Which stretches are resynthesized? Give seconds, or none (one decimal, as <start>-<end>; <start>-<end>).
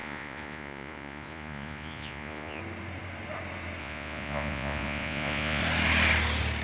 0.0-2.6; 3.8-5.6